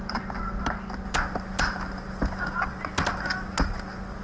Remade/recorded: recorded